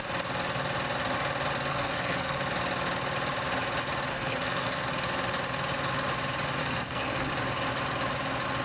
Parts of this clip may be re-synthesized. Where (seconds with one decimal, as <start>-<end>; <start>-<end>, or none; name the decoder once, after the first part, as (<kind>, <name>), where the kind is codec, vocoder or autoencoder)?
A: 1.7-2.4 (codec, SNAC); 4.1-4.8; 6.6-7.3